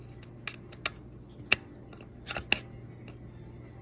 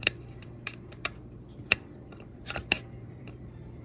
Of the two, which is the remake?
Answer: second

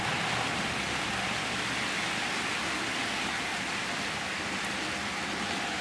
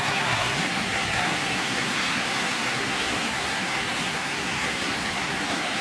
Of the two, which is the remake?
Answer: second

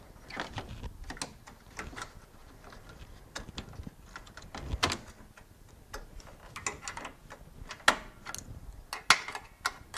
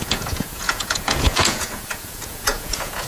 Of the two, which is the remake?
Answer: second